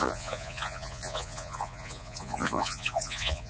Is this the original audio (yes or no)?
no